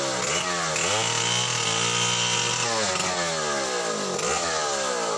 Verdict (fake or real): real